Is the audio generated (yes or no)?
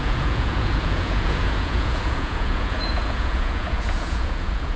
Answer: yes